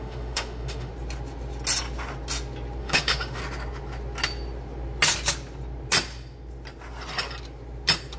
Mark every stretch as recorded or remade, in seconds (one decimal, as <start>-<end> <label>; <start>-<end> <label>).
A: 0.0-0.9 remade; 0.9-2.8 recorded; 2.8-3.4 remade; 3.4-8.2 recorded